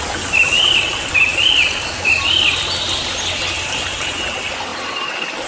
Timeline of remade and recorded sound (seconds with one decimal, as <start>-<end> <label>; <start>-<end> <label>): 0.0-1.3 recorded; 1.3-2.1 remade; 2.1-4.7 recorded; 4.7-5.5 remade